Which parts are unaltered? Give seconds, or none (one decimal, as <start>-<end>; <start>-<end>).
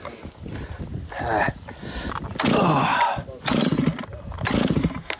0.0-5.2